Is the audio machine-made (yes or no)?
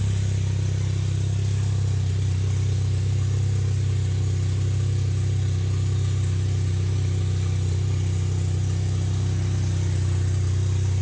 no